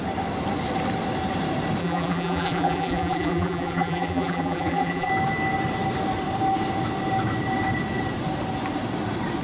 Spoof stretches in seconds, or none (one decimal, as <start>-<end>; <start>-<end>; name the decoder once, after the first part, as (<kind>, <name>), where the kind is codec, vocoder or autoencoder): 1.8-5.1 (vocoder, BigVGAN v2)